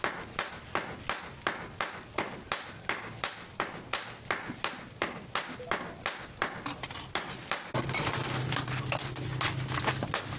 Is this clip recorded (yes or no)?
yes